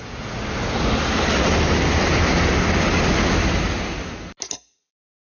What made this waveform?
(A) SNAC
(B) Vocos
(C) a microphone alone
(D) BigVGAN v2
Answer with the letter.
C